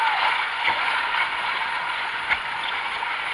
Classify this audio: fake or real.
fake